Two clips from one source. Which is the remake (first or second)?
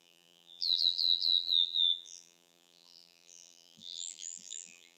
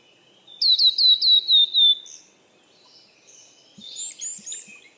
first